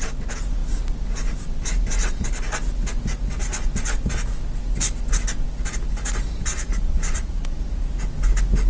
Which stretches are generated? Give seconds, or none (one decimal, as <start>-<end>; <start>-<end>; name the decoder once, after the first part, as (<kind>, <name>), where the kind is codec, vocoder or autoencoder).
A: 6.5-7.8 (vocoder, Vocos)